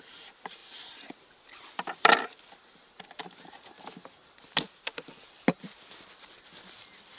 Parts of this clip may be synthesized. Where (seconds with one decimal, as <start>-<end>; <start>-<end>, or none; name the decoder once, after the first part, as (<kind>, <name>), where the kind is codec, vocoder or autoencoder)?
0.0-0.6 (vocoder, BigVGAN v2); 2.0-3.2; 5.1-7.2